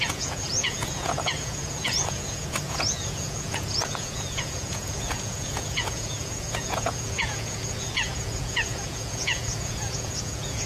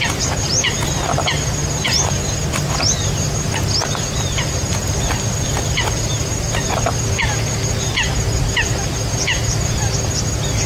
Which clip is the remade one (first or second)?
first